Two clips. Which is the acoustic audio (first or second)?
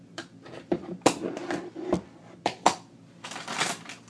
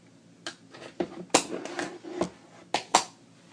second